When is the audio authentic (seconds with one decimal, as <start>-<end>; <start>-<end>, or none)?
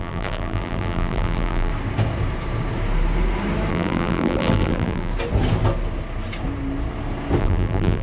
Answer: 1.7-3.7; 5.1-7.4